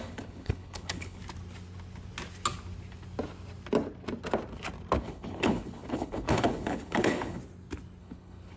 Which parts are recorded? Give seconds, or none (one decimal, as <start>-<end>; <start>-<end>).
1.2-5.0; 7.4-8.0